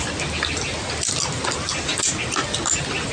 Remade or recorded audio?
recorded